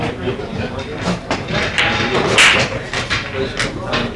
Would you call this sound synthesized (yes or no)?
no